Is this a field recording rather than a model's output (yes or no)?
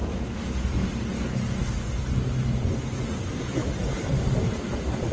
yes